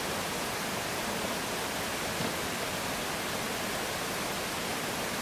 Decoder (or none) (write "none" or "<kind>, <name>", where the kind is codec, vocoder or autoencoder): none